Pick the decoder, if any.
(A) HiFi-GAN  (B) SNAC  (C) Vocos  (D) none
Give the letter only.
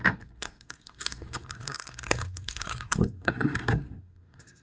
B